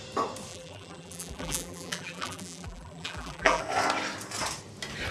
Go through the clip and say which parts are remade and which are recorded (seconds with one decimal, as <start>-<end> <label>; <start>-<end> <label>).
0.0-0.5 recorded; 0.5-3.6 remade; 3.6-5.1 recorded